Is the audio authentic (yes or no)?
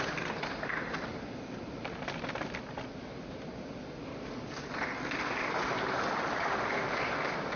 yes